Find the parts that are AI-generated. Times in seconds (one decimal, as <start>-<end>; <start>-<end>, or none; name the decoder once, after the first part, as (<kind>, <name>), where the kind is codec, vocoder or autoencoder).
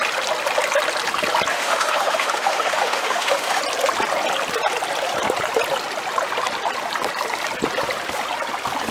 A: 1.5-3.6 (autoencoder, DAC-VAE)